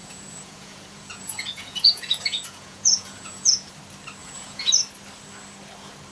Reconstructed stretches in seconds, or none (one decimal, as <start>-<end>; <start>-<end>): 0.0-3.7; 4.2-4.7